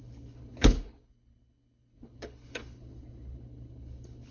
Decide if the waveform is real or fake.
fake